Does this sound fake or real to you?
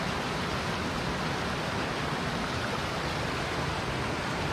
real